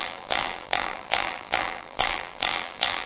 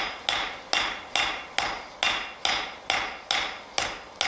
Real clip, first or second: second